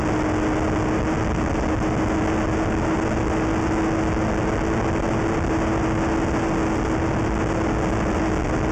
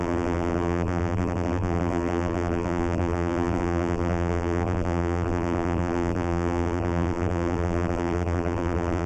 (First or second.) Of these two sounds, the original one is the first